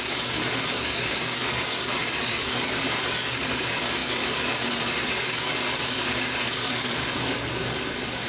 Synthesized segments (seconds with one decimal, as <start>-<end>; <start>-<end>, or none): 0.0-8.3